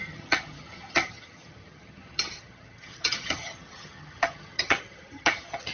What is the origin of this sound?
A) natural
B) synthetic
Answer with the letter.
B